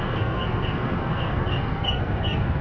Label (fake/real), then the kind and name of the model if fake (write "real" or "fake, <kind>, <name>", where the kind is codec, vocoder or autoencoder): fake, codec, SNAC